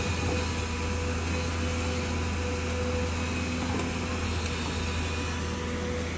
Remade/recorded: recorded